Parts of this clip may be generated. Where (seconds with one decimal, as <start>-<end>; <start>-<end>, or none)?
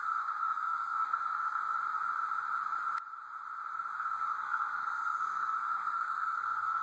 0.0-1.6; 4.0-6.8